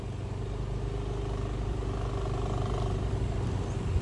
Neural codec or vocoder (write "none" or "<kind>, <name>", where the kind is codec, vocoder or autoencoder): none